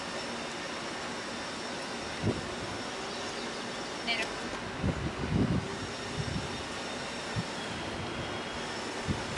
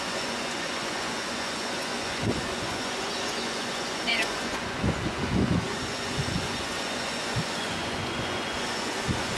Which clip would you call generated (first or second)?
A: second